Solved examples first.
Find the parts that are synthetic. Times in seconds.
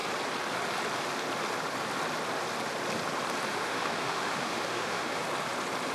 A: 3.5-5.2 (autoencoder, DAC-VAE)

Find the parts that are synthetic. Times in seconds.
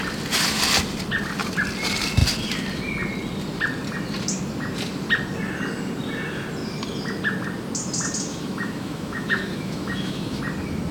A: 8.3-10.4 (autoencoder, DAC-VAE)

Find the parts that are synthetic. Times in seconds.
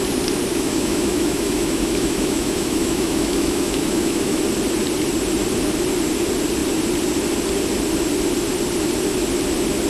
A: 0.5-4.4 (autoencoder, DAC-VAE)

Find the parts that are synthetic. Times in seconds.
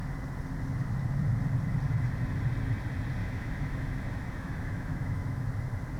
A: 3.2-5.5 (autoencoder, DAC-VAE)